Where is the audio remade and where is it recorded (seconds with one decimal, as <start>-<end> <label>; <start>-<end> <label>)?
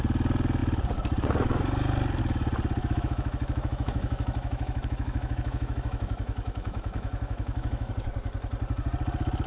0.0-2.8 recorded; 2.8-7.9 remade; 7.9-9.5 recorded